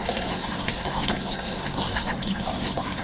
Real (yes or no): no